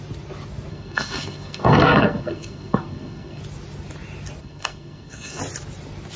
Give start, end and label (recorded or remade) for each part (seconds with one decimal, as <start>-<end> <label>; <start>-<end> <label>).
0.0-0.7 recorded; 0.7-3.4 remade; 3.4-4.4 recorded; 4.4-5.4 remade; 5.4-6.2 recorded